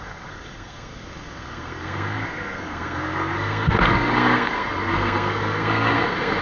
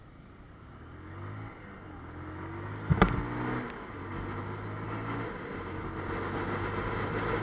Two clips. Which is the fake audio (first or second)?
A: first